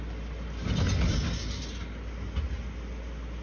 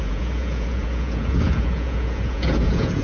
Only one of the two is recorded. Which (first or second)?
first